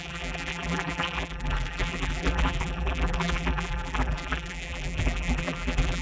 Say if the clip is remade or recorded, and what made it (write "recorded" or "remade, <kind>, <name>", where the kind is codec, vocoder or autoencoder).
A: remade, vocoder, BigVGAN v2